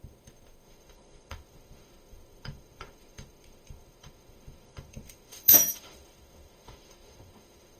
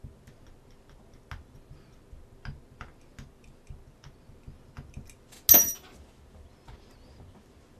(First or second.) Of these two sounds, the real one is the second